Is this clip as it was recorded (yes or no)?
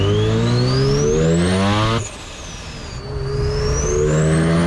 yes